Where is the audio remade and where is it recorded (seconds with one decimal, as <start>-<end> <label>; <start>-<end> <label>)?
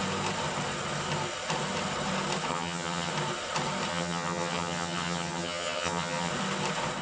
0.0-2.5 recorded; 2.5-3.1 remade; 3.1-3.9 recorded; 3.9-6.3 remade; 6.3-7.0 recorded